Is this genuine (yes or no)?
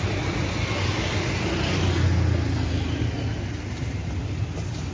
yes